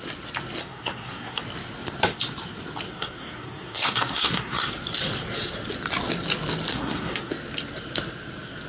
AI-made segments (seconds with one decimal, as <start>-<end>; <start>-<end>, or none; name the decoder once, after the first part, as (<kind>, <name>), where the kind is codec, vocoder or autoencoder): 0.6-1.4 (codec, SNAC); 2.9-4.7; 6.7-7.3